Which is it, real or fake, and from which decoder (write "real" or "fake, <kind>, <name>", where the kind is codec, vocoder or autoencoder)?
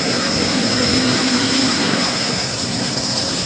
fake, codec, SNAC